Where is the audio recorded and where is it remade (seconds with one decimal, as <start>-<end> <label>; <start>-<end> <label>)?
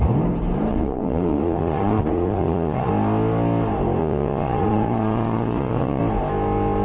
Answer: 0.0-0.7 recorded; 0.7-2.9 remade; 2.9-4.0 recorded; 4.0-6.0 remade; 6.0-6.8 recorded